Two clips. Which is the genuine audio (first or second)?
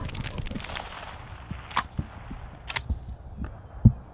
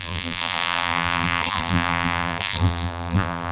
first